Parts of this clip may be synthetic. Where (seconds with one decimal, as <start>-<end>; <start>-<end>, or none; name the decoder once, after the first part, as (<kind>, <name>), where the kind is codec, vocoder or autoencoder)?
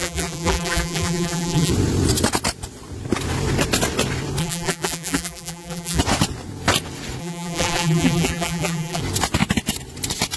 0.0-1.7 (vocoder, BigVGAN v2); 4.4-6.0; 7.2-9.0